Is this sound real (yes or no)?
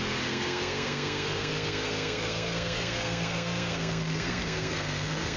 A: no